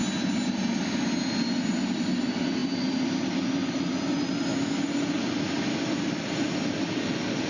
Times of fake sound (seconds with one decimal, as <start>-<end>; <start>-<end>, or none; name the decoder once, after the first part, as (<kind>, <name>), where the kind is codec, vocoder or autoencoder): none